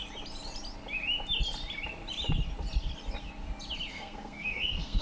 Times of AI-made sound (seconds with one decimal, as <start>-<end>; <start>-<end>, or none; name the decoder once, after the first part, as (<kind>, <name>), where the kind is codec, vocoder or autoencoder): 3.9-5.0 (codec, SNAC)

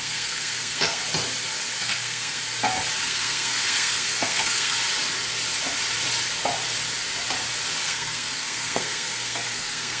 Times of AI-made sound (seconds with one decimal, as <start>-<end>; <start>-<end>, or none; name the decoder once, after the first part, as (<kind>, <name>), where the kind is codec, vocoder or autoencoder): 0.0-1.0 (codec, SNAC); 1.8-2.4; 3.0-4.8; 7.8-10.0

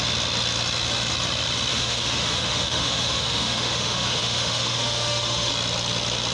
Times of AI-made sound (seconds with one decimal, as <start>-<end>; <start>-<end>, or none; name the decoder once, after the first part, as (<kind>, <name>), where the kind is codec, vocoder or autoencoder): 1.7-5.5 (autoencoder, DAC-VAE)

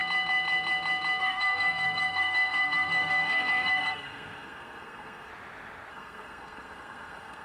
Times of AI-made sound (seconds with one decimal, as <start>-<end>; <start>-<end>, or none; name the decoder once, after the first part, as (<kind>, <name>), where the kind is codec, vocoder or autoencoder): 1.2-5.3 (codec, SNAC); 5.9-7.4